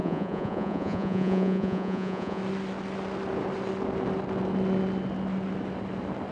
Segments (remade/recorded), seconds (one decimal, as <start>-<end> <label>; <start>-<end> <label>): 0.0-2.4 remade; 2.4-6.3 recorded